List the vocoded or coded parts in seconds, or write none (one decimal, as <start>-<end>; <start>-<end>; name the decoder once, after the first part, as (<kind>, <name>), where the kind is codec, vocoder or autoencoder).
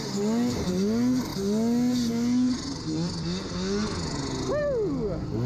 none